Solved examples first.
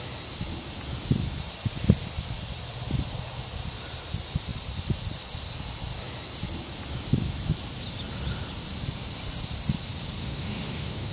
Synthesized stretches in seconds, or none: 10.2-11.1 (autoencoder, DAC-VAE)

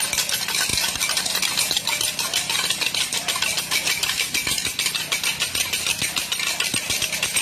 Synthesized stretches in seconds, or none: none

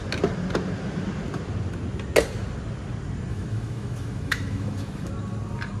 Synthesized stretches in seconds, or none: 3.3-5.1 (autoencoder, DAC-VAE)

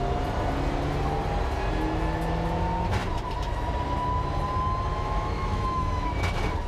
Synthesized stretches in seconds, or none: 4.9-6.1 (autoencoder, DAC-VAE)

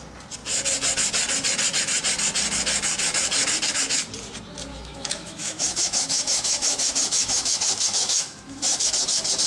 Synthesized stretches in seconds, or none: 4.7-8.9 (autoencoder, DAC-VAE)

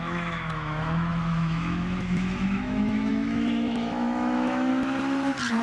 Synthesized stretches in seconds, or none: 0.0-4.7 (autoencoder, DAC-VAE)

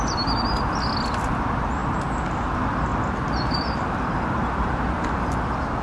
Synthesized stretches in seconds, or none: none

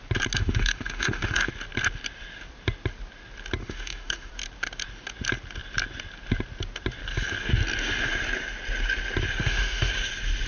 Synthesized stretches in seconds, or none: 0.4-1.5 (autoencoder, DAC-VAE); 3.6-4.3; 9.4-9.9